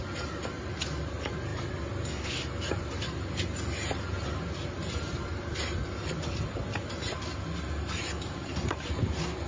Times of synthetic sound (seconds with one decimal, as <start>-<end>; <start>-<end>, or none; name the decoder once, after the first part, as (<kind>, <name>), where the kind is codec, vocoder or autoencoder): none